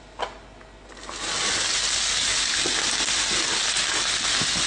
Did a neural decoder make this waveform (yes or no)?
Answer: no